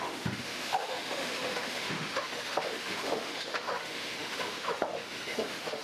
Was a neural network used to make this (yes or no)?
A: yes